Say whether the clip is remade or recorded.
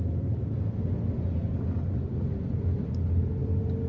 recorded